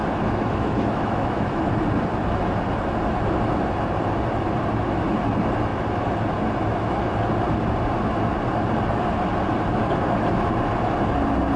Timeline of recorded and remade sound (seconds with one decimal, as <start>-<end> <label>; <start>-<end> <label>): 0.0-1.7 remade; 1.7-11.6 recorded